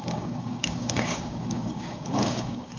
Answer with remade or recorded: remade